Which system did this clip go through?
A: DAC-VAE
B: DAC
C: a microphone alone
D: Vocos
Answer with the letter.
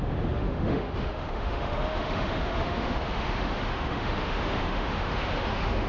A